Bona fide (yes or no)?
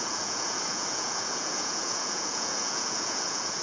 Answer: no